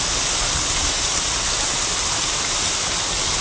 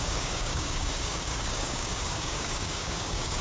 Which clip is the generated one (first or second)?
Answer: second